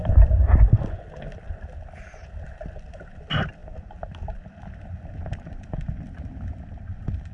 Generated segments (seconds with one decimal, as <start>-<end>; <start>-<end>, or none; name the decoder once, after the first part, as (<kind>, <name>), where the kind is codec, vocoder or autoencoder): none